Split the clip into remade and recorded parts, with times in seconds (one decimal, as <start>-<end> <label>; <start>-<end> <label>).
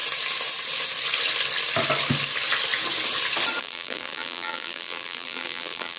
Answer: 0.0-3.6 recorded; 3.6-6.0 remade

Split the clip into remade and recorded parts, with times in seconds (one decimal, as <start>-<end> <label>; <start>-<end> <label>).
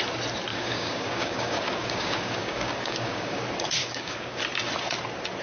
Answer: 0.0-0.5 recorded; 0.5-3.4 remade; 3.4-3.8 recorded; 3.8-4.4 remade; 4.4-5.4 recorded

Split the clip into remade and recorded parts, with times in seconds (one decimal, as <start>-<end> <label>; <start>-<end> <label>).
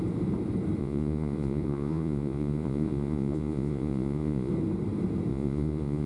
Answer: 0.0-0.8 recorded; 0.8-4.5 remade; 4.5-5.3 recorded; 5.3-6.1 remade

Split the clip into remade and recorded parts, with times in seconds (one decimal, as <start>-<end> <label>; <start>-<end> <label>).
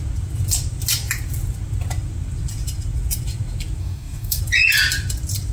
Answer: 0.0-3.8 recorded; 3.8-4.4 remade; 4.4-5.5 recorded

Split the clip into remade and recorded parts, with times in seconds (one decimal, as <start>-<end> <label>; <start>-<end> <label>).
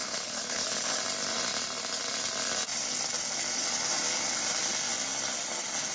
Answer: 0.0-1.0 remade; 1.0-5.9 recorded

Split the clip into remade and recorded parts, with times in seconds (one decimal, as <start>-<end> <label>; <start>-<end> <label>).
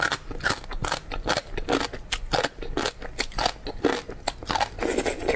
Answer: 0.0-5.4 recorded